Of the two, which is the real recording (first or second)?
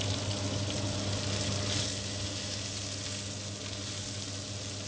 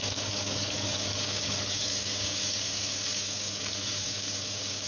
first